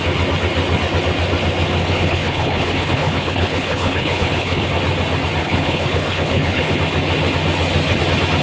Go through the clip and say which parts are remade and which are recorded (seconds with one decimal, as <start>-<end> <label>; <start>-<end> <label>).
0.0-1.8 recorded; 1.8-4.7 remade; 4.7-5.4 recorded; 5.4-6.8 remade; 6.8-8.4 recorded